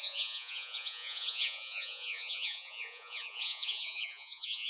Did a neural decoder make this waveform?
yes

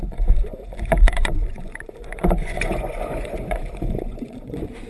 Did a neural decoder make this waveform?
yes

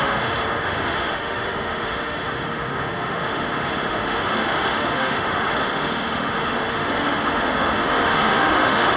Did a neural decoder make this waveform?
yes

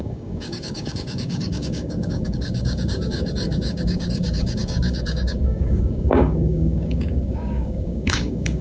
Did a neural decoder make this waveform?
yes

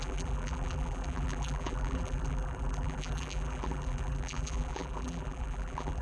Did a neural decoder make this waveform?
yes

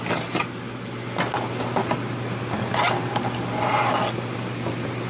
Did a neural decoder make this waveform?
no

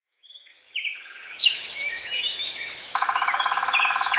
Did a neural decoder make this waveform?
yes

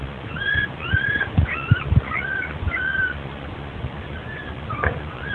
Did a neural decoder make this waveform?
yes